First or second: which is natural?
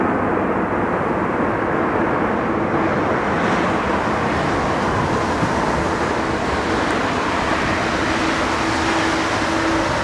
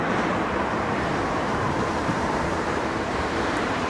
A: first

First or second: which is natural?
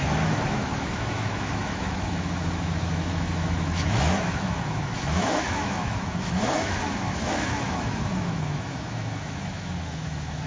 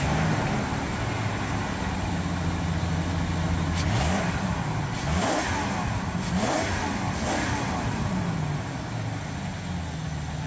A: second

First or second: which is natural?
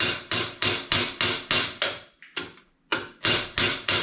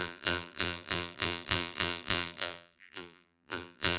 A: first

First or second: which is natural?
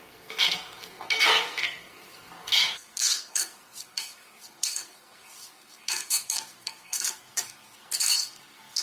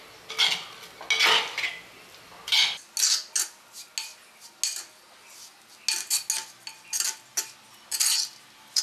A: second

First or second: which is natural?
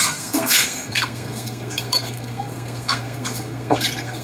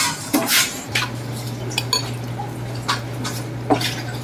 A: second